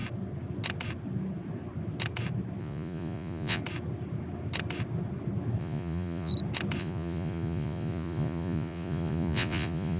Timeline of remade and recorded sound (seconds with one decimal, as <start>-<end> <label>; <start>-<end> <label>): 0.0-2.6 recorded; 2.6-3.6 remade; 3.6-5.6 recorded; 5.6-6.3 remade; 6.3-6.8 recorded; 6.8-10.0 remade